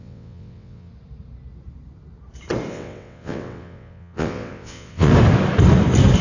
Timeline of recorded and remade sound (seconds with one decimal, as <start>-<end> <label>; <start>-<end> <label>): 0.0-0.9 remade; 0.9-2.7 recorded; 2.7-5.1 remade; 5.1-6.2 recorded